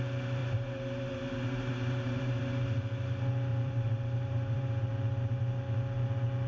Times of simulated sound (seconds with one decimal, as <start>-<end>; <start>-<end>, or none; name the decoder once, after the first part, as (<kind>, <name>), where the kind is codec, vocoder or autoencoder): 0.4-2.4 (vocoder, BigVGAN v2); 3.5-4.9